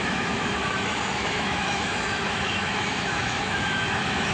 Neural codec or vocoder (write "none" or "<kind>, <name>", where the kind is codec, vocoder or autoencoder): autoencoder, DAC-VAE